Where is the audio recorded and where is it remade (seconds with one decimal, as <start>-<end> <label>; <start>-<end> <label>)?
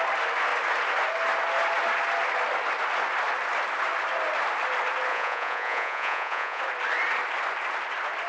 0.0-5.1 recorded; 5.1-6.6 remade; 6.6-8.3 recorded